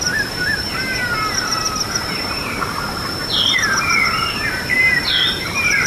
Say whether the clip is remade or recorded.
remade